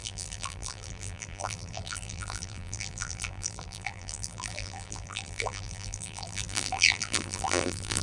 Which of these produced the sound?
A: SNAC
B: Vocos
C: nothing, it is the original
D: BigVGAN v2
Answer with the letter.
D